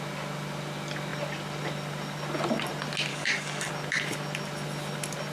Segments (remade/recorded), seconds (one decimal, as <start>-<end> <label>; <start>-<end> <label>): 0.0-3.1 recorded; 3.1-3.7 remade; 3.7-5.3 recorded